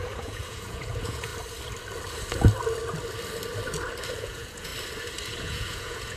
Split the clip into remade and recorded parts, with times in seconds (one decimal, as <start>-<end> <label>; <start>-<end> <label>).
0.0-1.3 remade; 1.3-4.2 recorded; 4.2-4.7 remade; 4.7-5.4 recorded; 5.4-6.2 remade